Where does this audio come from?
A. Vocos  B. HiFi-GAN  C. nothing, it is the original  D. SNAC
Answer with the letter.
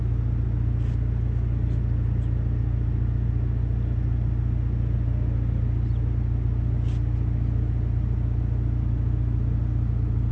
C